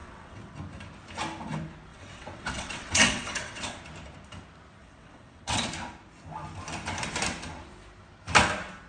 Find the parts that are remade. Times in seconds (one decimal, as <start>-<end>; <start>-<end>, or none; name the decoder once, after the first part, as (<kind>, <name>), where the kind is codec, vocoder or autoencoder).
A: 0.0-0.5 (vocoder, WaveNeXt); 1.9-3.8; 4.8-5.6